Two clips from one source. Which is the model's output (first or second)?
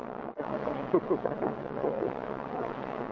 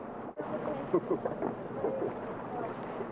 first